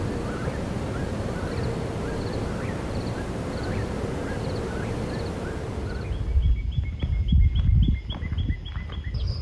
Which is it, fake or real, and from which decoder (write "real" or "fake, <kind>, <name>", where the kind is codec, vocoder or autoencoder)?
real